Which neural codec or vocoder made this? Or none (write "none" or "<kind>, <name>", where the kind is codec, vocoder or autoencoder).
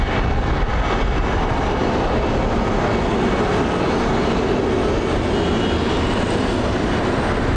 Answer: none